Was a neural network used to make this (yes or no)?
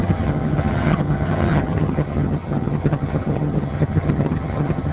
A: yes